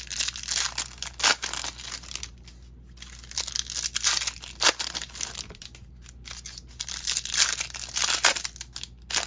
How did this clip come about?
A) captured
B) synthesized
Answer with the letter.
A